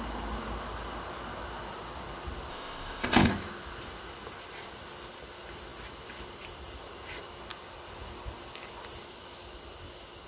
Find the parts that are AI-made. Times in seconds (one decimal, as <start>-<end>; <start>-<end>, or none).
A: 2.5-3.3